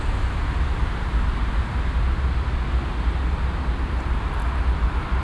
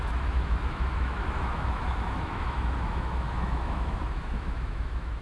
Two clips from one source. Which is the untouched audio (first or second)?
first